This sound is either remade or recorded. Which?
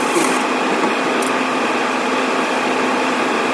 recorded